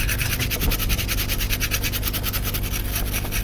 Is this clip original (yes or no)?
yes